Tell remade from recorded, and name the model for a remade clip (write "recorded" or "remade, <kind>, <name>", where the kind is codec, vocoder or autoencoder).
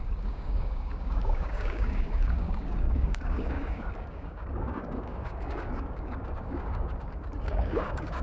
remade, codec, DAC